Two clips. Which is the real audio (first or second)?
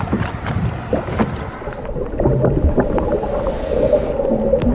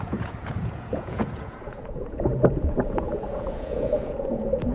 first